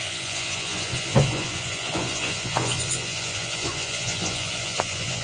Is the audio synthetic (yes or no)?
yes